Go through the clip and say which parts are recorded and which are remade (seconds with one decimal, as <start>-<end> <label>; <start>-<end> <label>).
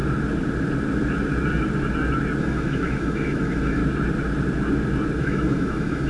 0.0-2.4 recorded; 2.4-3.8 remade; 3.8-5.2 recorded; 5.2-6.1 remade